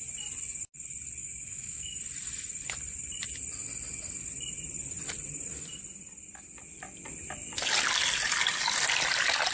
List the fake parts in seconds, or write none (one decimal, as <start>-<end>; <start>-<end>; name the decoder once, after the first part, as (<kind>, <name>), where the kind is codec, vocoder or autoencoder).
1.2-2.0 (autoencoder, DAC-VAE)